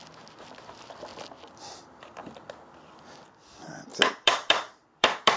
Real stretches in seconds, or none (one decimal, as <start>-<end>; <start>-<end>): 0.0-3.9